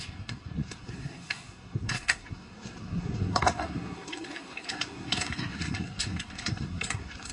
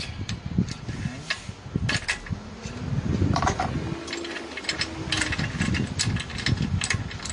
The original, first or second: second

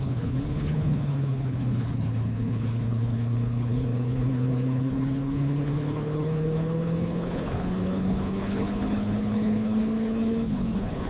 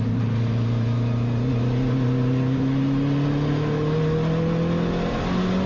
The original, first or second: second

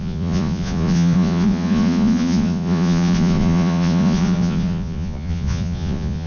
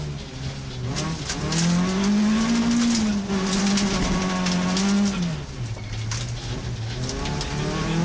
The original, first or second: second